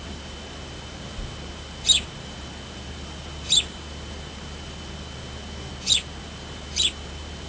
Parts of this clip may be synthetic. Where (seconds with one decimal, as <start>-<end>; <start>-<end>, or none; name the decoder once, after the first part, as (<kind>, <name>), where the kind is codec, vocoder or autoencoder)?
0.0-5.7 (vocoder, BigVGAN v2); 6.2-7.5